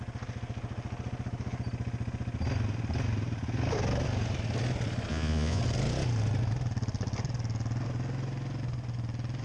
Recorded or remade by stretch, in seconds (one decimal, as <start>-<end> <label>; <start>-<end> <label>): 0.0-5.1 recorded; 5.1-5.6 remade; 5.6-9.4 recorded